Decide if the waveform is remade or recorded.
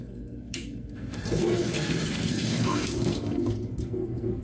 remade